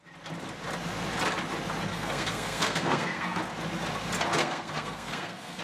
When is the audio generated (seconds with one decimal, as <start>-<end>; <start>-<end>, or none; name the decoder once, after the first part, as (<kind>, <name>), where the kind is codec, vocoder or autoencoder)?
1.9-3.4 (codec, SNAC); 4.4-5.6